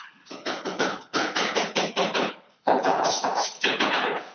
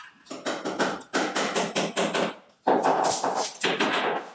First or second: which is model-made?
first